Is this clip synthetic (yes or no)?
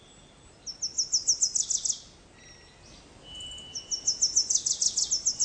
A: no